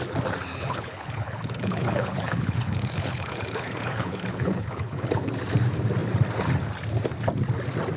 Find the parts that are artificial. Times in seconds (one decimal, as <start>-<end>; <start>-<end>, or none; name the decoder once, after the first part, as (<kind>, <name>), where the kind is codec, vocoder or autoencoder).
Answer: 0.5-5.3 (codec, HILCodec)